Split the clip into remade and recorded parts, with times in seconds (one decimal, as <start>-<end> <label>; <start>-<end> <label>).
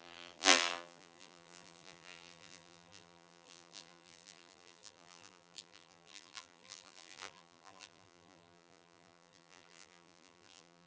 0.0-10.9 remade